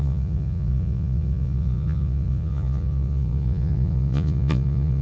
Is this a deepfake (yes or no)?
yes